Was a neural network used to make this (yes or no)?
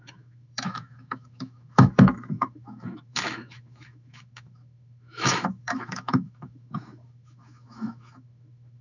yes